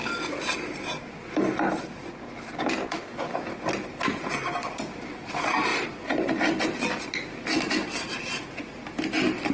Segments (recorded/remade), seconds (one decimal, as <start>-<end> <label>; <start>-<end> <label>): 0.0-3.0 recorded; 3.0-3.5 remade; 3.5-9.5 recorded